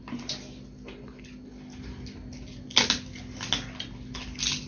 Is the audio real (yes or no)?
yes